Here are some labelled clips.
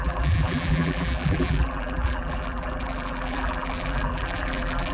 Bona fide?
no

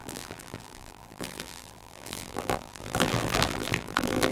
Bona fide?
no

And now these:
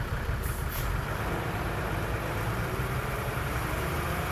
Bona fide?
no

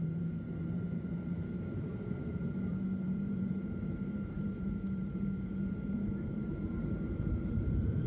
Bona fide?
no